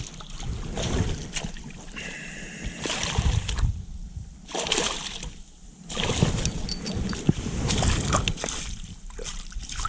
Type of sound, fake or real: real